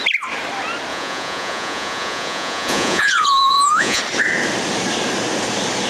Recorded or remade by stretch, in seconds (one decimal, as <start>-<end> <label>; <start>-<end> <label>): 0.0-0.9 recorded; 0.9-4.0 remade; 4.0-5.9 recorded